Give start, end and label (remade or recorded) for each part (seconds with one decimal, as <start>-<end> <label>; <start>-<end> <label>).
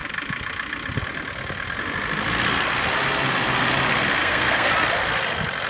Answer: 0.0-4.2 recorded; 4.2-4.7 remade; 4.7-5.7 recorded